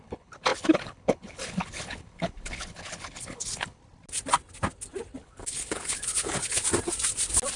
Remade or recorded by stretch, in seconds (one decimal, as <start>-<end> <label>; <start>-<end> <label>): 0.0-3.8 remade; 3.8-5.2 recorded; 5.2-6.6 remade; 6.6-7.6 recorded